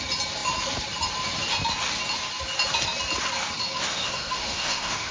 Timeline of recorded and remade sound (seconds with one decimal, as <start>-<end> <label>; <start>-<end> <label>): 0.0-3.9 recorded; 3.9-5.1 remade